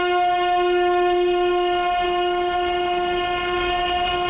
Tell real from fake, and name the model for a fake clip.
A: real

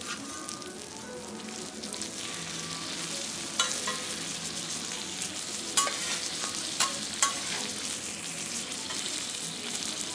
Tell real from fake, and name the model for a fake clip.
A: real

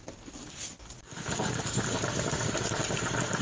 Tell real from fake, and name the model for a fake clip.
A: real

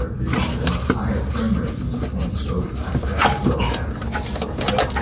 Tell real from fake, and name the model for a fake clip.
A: real